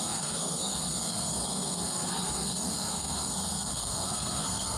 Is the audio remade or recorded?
remade